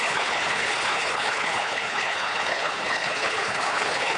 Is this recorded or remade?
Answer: remade